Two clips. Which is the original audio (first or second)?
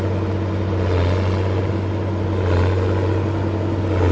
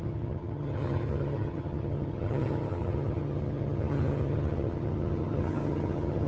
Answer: first